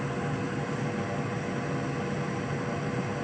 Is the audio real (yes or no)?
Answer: yes